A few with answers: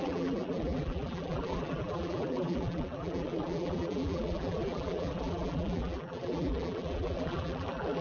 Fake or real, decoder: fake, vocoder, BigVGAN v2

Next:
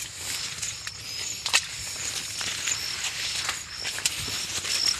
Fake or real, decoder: real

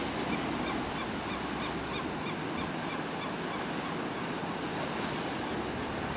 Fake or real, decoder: real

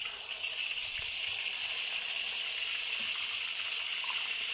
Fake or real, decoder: real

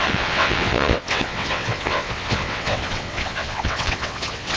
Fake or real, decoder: fake, vocoder, WaveNeXt